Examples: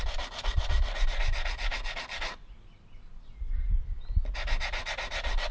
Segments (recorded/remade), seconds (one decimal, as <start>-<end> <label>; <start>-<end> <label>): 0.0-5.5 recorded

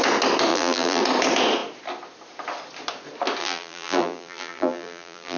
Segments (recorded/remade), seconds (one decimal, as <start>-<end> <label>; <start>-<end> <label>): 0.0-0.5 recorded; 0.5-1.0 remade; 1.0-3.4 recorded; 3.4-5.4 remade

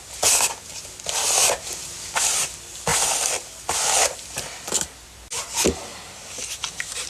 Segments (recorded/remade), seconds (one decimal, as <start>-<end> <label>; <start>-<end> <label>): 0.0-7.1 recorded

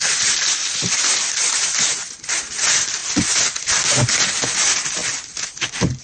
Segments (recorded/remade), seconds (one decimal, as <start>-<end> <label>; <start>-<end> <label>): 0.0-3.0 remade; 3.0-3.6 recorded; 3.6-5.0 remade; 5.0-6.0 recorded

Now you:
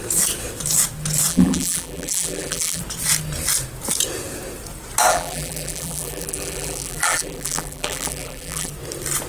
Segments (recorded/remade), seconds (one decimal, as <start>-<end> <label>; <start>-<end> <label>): 0.0-1.3 recorded; 1.3-2.8 remade; 2.8-5.1 recorded; 5.1-8.7 remade; 8.7-9.3 recorded

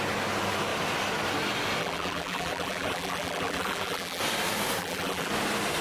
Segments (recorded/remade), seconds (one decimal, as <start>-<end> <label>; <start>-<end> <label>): 0.0-1.8 recorded; 1.8-4.2 remade; 4.2-4.8 recorded; 4.8-5.3 remade; 5.3-5.8 recorded

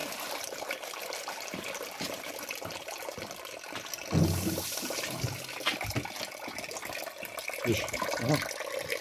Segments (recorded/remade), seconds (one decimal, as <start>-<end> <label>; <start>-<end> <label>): 0.0-9.0 recorded